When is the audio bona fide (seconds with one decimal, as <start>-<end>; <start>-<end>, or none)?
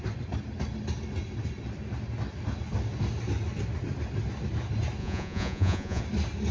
0.0-5.0; 6.0-6.5